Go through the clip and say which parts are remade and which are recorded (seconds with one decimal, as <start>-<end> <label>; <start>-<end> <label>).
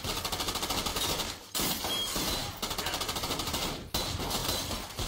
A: 0.0-0.9 recorded; 0.9-1.9 remade; 1.9-2.4 recorded; 2.4-3.6 remade; 3.6-5.1 recorded